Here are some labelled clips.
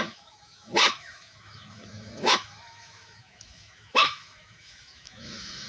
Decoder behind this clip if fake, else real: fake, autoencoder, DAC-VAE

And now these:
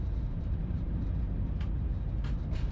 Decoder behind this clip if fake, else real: fake, vocoder, BigVGAN v2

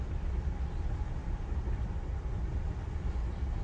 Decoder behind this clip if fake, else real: real